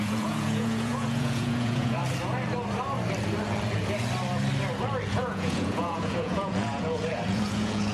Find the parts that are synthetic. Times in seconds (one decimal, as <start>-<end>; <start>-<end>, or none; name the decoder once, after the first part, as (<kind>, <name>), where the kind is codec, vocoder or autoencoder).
0.0-2.0 (vocoder, Vocos); 5.1-7.9